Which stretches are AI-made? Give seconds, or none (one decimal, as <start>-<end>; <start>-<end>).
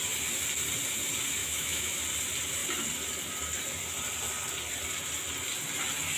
1.4-2.0